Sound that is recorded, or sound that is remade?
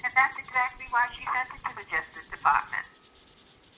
remade